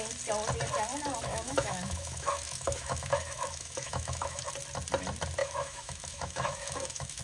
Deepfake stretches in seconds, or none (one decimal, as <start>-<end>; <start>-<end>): 1.3-4.5; 5.4-7.2